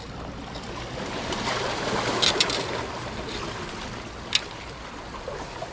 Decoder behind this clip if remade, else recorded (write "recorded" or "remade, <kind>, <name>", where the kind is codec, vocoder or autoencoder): recorded